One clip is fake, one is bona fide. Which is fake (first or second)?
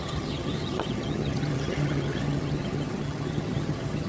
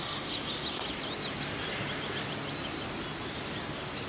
first